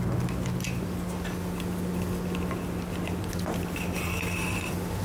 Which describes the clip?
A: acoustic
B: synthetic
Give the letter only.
A